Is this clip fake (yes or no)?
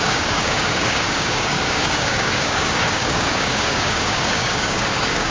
yes